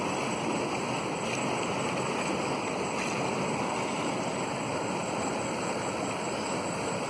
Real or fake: real